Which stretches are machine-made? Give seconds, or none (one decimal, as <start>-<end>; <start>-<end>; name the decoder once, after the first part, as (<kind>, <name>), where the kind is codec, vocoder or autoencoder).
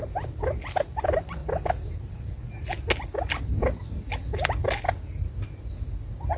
none